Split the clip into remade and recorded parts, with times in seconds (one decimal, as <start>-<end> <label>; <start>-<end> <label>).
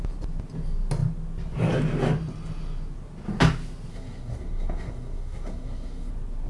0.0-3.9 recorded; 3.9-6.1 remade; 6.1-6.5 recorded